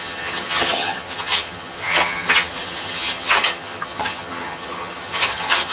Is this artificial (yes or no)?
yes